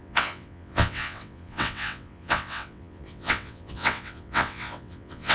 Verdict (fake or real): fake